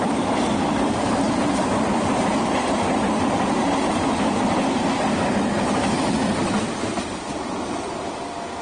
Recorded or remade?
remade